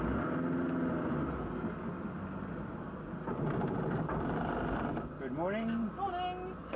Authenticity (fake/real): real